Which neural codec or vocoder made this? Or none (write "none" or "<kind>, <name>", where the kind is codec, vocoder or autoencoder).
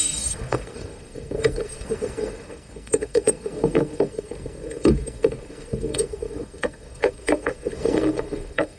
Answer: codec, SNAC